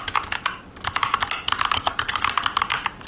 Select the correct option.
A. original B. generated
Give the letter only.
A